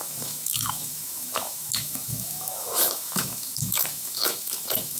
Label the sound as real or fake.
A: fake